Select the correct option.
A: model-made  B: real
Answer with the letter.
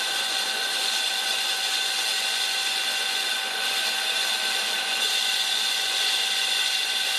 A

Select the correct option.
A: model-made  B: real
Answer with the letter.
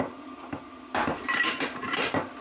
B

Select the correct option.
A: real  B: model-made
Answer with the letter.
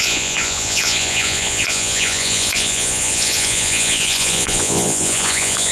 B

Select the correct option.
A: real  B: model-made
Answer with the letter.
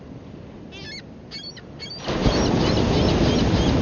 A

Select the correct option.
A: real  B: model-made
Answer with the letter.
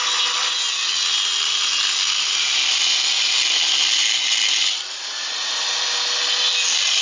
A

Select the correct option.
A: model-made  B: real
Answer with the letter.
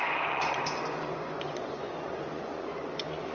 A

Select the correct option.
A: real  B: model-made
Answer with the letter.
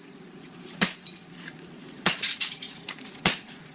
B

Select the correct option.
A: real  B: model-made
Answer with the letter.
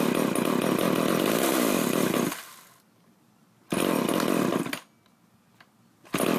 A